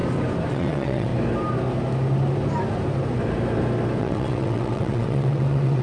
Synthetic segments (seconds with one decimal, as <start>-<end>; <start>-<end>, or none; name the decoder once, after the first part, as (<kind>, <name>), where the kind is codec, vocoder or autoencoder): 0.5-1.1 (vocoder, WaveNeXt); 4.0-5.8

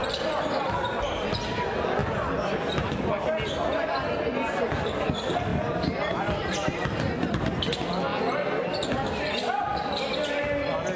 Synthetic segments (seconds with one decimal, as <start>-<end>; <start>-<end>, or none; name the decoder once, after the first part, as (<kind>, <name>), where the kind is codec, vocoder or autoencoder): none

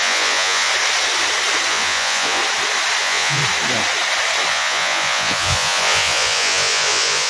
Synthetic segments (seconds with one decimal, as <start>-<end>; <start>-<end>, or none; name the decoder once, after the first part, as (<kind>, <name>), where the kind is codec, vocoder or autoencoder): 0.0-0.7 (vocoder, Vocos); 1.7-2.4; 3.0-3.4; 4.5-7.3

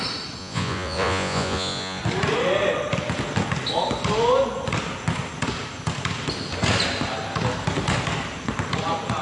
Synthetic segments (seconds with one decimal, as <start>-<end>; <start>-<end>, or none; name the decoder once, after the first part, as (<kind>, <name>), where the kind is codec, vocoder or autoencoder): 0.4-2.0 (vocoder, Vocos)

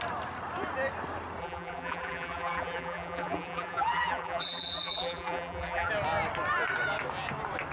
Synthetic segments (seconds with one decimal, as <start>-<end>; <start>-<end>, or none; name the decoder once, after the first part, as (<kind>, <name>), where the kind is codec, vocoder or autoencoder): 1.4-5.9 (vocoder, BigVGAN v2)